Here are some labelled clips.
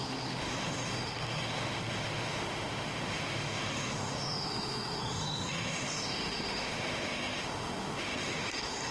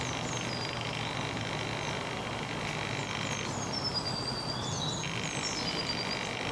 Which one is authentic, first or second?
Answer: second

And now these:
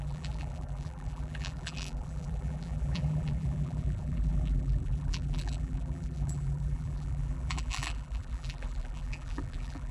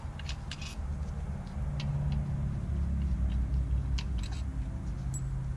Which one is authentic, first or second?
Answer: second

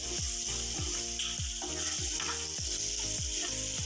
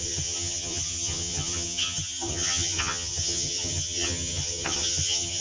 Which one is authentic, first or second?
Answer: first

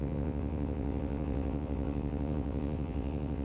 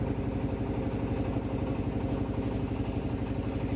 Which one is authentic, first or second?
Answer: second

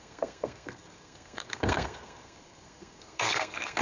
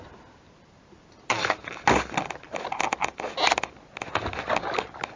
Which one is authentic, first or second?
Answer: second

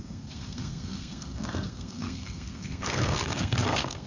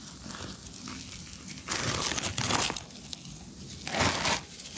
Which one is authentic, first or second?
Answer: second